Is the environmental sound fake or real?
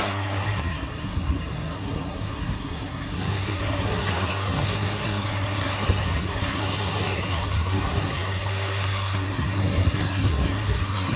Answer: fake